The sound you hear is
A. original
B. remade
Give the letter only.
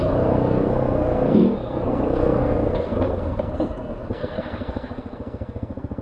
B